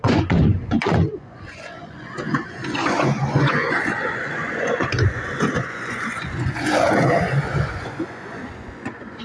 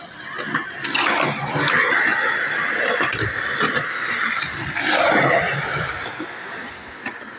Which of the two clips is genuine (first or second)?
second